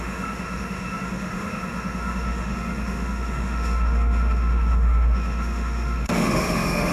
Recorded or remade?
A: remade